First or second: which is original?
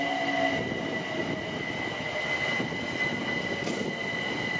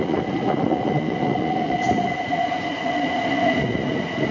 first